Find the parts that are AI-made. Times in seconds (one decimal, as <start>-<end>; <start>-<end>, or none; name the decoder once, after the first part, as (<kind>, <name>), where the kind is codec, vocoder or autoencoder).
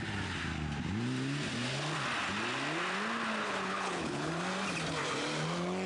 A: 3.4-4.3 (codec, HILCodec)